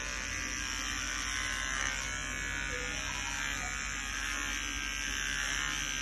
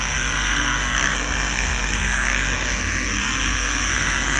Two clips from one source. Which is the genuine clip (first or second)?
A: first